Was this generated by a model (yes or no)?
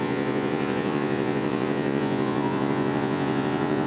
yes